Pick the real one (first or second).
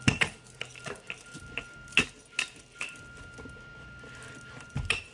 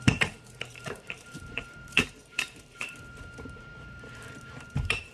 first